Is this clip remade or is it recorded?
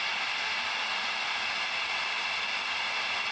recorded